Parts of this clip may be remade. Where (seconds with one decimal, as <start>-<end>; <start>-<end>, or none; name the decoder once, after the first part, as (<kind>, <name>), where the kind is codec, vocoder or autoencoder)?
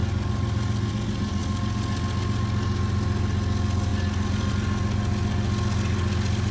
none